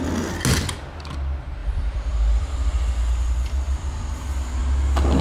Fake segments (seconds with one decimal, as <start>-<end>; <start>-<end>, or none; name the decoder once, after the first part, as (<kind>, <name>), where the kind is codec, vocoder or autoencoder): 1.6-4.6 (vocoder, BigVGAN v2)